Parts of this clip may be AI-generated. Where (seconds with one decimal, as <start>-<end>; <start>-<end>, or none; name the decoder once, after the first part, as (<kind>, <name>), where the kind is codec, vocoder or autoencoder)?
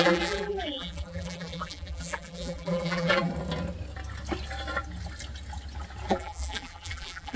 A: 0.0-3.3 (vocoder, BigVGAN v2); 6.1-7.4